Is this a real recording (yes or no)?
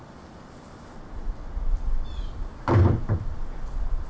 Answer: yes